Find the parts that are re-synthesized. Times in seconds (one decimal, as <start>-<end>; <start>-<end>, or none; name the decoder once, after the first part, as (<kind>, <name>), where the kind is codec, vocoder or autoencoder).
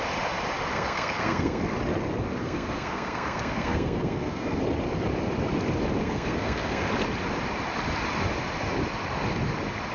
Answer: 0.7-1.6 (codec, SNAC); 2.4-4.6; 6.0-6.9